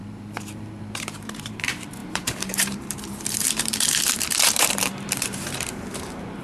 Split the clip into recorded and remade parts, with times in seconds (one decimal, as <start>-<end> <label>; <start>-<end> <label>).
0.0-6.4 remade